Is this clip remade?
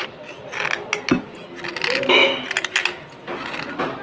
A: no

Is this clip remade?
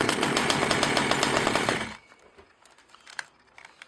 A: yes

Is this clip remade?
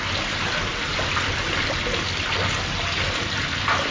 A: no